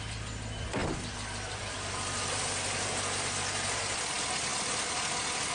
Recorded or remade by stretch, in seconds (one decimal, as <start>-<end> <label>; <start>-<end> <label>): 0.0-5.5 recorded